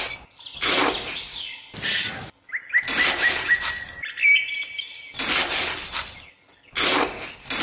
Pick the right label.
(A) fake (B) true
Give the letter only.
B